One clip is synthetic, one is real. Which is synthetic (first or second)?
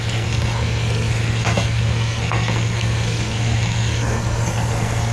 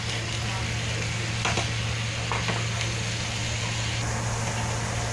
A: first